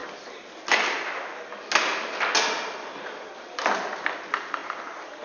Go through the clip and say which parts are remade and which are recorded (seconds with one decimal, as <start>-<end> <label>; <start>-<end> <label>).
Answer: 0.0-5.2 recorded